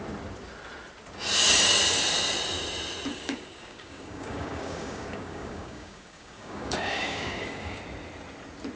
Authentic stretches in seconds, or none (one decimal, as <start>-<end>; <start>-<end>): 0.0-3.1; 7.8-8.8